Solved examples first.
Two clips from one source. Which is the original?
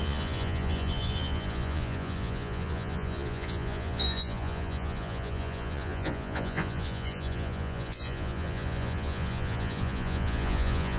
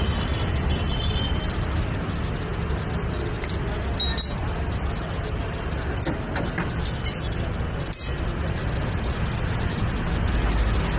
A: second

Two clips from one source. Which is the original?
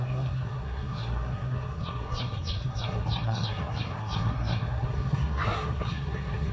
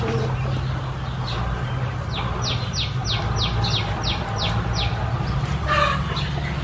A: second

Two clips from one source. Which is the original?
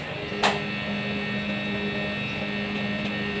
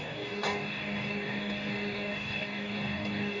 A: first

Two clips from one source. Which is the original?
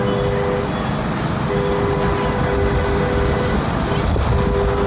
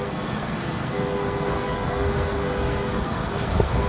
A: first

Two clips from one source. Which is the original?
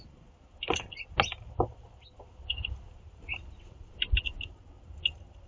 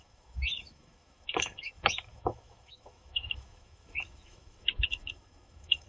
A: first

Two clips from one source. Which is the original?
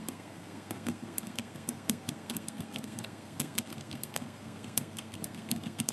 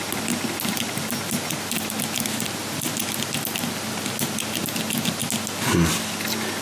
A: second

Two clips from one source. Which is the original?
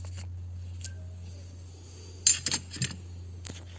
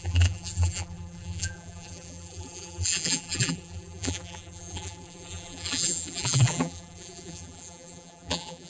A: first